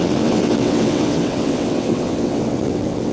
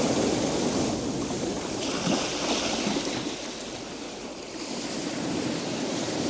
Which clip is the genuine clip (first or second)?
second